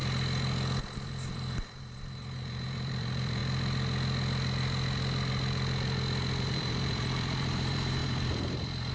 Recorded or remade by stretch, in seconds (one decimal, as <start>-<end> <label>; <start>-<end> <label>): 0.0-0.8 recorded; 0.8-3.4 remade; 3.4-6.4 recorded; 6.4-8.9 remade